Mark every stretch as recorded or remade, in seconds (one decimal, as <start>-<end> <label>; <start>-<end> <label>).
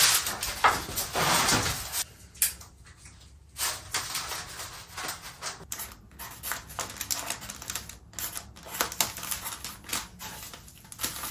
0.0-11.3 recorded